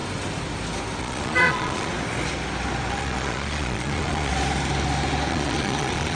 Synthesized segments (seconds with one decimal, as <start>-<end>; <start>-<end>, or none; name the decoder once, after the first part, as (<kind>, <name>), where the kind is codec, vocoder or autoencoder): 1.0-1.9 (vocoder, Vocos); 2.9-4.3; 5.3-6.1